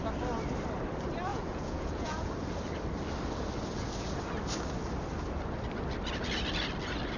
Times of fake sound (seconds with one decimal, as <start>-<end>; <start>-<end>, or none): 1.3-2.3